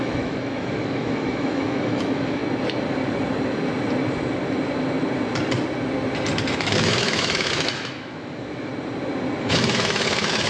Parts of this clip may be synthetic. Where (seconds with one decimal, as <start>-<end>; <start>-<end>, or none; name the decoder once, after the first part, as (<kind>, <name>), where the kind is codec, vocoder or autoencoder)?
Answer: 0.0-2.4 (autoencoder, DAC-VAE); 6.5-8.7; 9.4-10.5